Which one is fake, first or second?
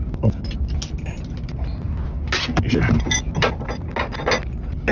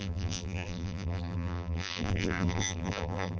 second